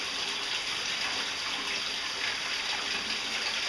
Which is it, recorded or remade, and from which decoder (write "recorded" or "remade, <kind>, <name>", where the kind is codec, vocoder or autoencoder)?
recorded